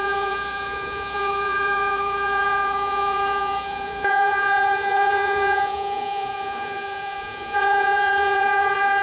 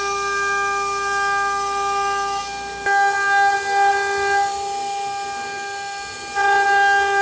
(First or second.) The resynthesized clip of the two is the first